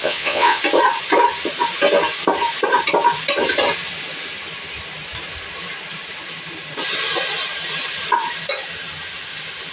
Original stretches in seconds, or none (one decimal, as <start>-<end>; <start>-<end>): 0.6-9.7